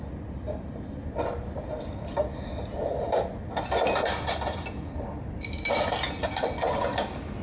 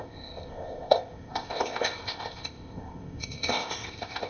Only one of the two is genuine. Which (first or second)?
first